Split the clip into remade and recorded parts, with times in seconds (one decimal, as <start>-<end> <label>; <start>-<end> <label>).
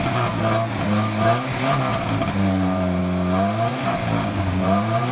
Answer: 0.0-1.9 recorded; 1.9-3.0 remade; 3.0-3.7 recorded; 3.7-5.1 remade